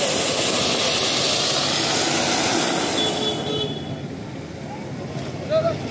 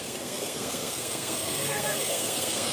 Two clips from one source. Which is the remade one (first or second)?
second